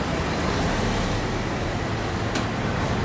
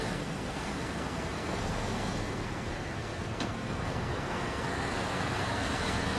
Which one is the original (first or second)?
first